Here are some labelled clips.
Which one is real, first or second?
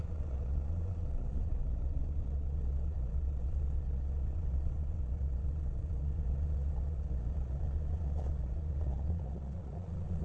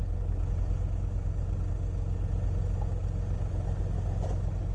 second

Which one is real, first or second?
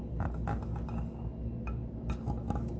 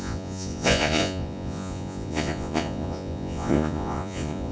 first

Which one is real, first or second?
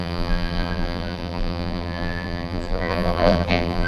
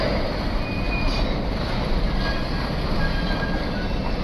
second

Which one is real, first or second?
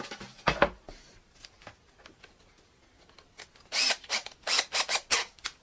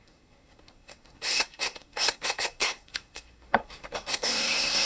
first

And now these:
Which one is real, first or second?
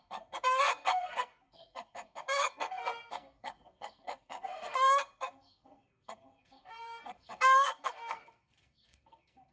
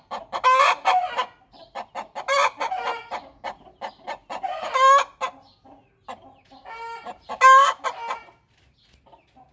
second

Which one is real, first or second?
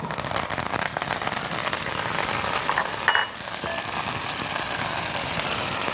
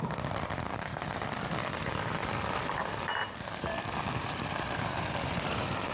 first